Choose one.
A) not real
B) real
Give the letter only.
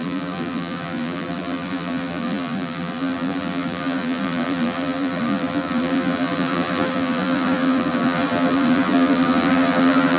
A